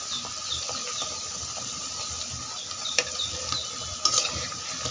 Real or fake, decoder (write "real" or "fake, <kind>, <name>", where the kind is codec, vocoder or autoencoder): real